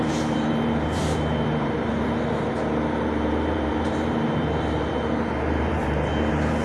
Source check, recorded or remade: remade